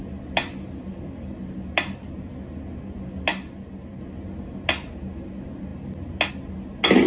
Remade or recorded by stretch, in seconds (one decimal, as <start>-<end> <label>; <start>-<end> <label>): 0.0-7.1 recorded